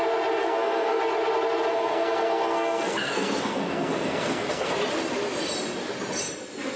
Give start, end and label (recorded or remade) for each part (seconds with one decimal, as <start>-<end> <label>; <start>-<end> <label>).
0.0-0.4 recorded; 0.4-1.0 remade; 1.0-1.7 recorded; 1.7-4.7 remade; 4.7-6.8 recorded